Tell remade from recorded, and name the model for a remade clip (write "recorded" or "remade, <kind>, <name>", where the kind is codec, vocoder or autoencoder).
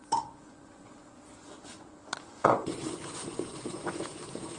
remade, vocoder, Vocos